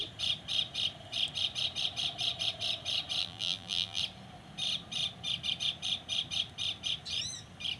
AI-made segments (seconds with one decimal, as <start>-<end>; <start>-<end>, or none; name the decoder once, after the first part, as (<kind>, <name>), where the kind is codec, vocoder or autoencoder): 3.2-4.0 (vocoder, BigVGAN v2)